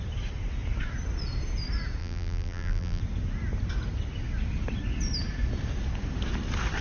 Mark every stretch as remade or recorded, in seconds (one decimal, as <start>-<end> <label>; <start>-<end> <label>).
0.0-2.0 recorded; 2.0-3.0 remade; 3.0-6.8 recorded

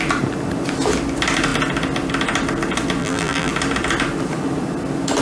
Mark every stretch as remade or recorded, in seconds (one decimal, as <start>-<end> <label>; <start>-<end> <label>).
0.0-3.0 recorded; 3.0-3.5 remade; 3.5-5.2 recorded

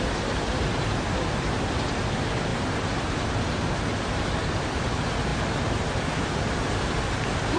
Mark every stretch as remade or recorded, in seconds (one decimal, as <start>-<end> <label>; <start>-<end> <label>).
0.0-7.6 recorded